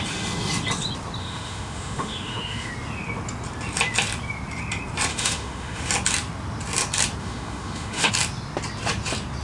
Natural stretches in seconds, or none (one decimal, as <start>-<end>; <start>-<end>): 0.0-1.2; 2.7-5.1; 5.9-7.2; 8.1-9.4